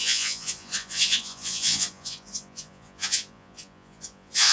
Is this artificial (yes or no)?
yes